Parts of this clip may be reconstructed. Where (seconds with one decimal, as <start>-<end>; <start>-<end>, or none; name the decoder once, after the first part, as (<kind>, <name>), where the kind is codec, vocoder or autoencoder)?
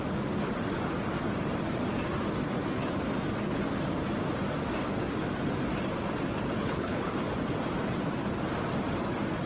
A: 6.6-7.1 (codec, HILCodec)